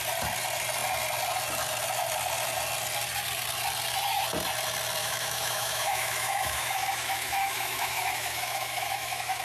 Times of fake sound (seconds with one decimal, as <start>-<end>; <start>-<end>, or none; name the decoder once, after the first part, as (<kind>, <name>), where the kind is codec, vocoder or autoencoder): 5.0-9.4 (autoencoder, DAC-VAE)

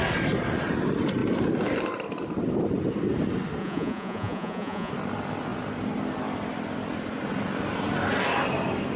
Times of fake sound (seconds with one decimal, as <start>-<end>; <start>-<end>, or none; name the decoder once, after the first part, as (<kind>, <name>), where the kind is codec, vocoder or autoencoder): 3.6-4.9 (vocoder, Vocos)

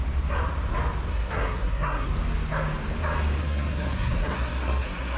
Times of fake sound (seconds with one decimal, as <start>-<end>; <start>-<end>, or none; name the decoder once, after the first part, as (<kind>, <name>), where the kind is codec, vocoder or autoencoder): 1.1-2.1 (codec, SNAC); 3.4-5.2

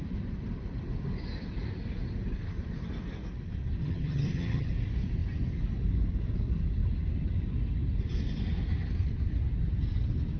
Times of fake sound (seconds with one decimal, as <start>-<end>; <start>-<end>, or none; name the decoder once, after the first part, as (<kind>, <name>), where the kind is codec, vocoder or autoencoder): 3.8-4.7 (vocoder, HiFi-GAN)

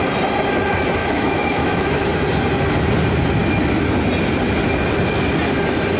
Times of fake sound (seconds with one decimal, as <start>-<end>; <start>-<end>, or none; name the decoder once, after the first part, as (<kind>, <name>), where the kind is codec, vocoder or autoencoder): 1.0-2.1 (autoencoder, DAC-VAE)